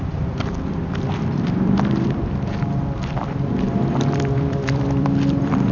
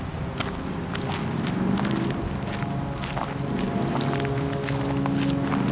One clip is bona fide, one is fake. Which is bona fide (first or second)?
second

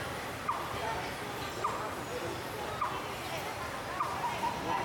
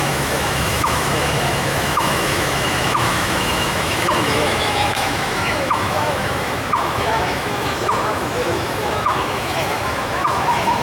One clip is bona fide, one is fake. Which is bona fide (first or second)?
first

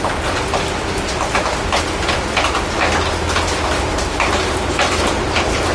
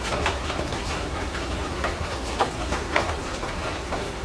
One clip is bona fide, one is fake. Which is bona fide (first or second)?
first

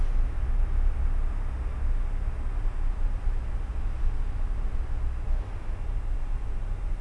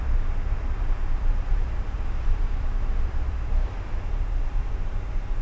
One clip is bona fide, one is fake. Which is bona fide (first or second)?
first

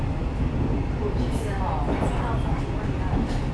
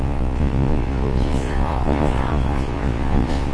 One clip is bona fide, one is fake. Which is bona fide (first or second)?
first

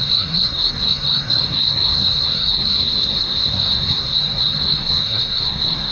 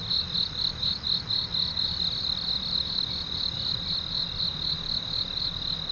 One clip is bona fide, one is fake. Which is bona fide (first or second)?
second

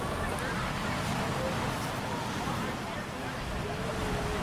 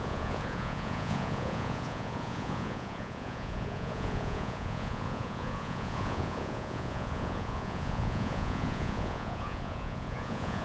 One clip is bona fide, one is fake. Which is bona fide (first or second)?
first